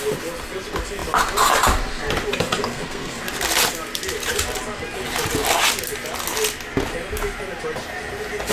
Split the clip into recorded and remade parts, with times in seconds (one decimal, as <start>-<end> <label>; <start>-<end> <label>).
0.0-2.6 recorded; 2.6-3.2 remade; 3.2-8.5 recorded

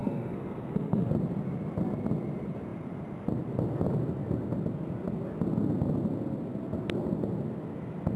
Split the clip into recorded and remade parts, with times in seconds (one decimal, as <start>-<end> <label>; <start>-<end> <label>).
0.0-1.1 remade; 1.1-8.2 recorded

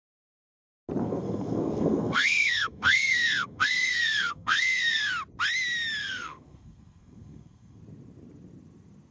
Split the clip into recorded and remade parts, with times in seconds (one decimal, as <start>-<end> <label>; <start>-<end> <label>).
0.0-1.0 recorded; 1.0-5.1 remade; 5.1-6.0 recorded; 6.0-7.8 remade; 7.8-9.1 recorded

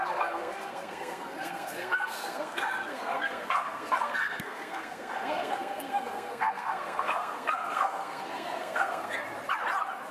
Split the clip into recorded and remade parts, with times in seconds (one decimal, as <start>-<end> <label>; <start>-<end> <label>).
0.0-9.2 remade; 9.2-10.1 recorded

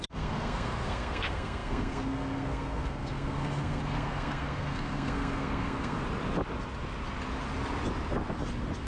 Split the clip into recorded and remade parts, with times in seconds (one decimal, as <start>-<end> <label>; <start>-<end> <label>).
0.0-6.0 remade; 6.0-8.9 recorded

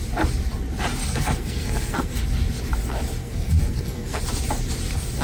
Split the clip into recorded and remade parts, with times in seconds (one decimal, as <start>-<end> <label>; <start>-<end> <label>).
0.0-1.0 recorded; 1.0-2.2 remade; 2.2-3.2 recorded; 3.2-4.2 remade; 4.2-5.2 recorded

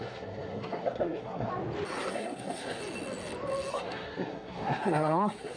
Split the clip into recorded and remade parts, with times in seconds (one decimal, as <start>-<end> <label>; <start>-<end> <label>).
0.0-1.5 remade; 1.5-2.1 recorded; 2.1-2.8 remade; 2.8-3.7 recorded; 3.7-5.6 remade

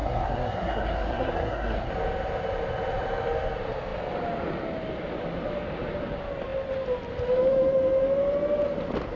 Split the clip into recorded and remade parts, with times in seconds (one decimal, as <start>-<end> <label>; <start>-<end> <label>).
0.0-1.9 remade; 1.9-9.2 recorded